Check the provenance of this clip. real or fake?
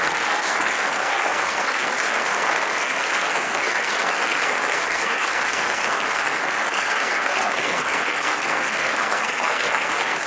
fake